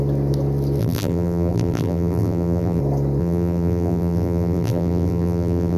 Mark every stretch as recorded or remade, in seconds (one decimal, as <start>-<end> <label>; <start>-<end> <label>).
0.0-0.8 recorded; 0.8-2.8 remade; 2.8-3.2 recorded; 3.2-5.8 remade